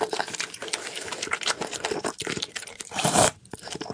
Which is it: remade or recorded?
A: remade